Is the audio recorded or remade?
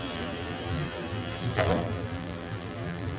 remade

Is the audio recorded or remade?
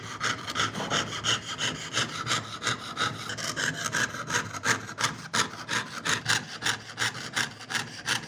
recorded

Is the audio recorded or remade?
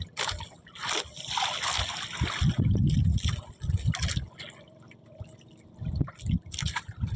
recorded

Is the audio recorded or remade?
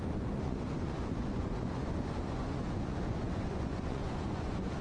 remade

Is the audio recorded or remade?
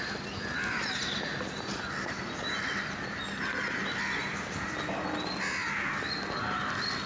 recorded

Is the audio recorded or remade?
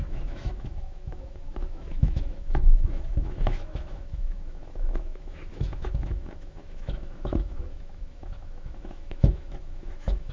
remade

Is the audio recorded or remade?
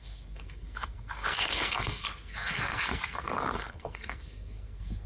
remade